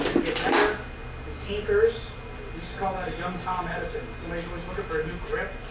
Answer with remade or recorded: recorded